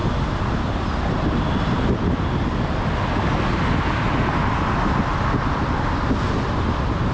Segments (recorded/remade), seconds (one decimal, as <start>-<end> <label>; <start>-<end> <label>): 0.0-7.1 recorded